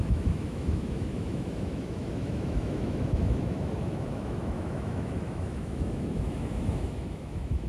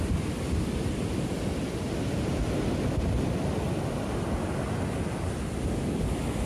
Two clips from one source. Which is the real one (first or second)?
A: second